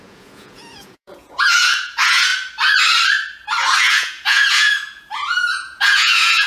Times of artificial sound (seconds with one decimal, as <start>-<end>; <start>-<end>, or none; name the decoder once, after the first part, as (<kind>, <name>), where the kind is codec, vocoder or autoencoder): 0.0-2.3 (vocoder, Vocos); 3.8-6.5